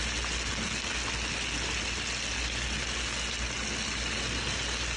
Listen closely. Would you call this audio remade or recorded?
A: recorded